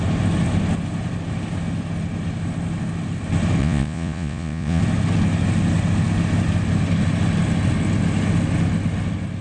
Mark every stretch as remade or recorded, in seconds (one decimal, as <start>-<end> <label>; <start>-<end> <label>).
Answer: 0.0-3.6 recorded; 3.6-4.8 remade; 4.8-9.4 recorded